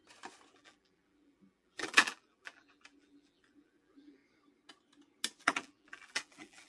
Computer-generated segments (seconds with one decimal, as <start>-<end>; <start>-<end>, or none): 0.5-4.2; 5.4-6.7